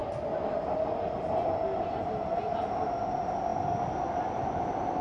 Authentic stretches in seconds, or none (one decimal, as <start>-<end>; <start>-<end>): 0.0-5.0